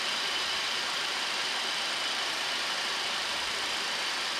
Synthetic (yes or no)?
yes